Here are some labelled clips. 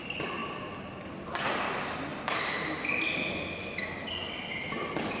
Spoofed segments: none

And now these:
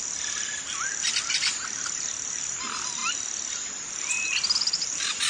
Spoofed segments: none

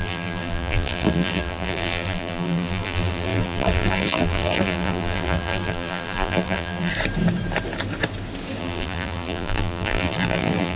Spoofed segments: 0.0-6.9 (vocoder, BigVGAN v2); 8.6-10.8

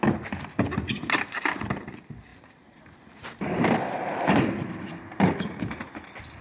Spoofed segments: 2.3-5.6 (vocoder, BigVGAN v2)

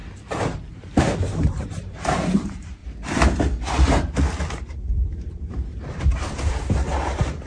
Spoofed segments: 0.7-2.8 (vocoder, BigVGAN v2); 4.5-7.5